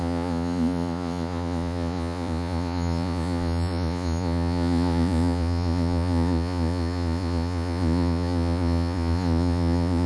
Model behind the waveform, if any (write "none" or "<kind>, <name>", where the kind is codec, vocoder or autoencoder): vocoder, Vocos